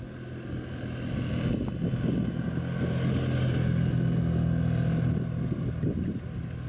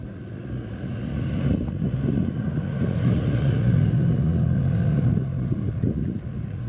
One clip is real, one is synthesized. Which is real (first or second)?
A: first